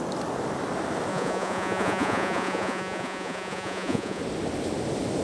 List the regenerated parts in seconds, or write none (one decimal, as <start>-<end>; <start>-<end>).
1.1-4.2